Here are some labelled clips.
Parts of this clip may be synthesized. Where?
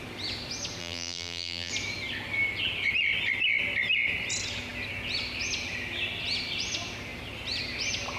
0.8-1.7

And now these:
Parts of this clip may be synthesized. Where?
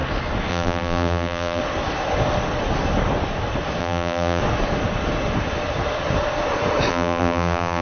0.5-1.6; 3.8-4.4; 6.9-7.8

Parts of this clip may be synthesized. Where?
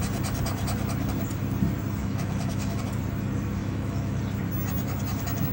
2.0-2.8; 3.6-4.2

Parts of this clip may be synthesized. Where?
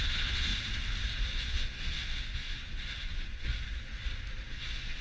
0.0-0.5; 1.3-3.5; 4.5-5.0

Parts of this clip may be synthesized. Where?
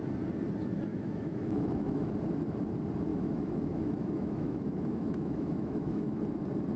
0.9-2.1; 3.1-6.2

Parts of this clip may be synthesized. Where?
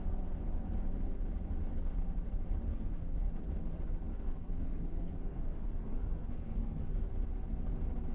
2.7-3.3; 4.1-7.1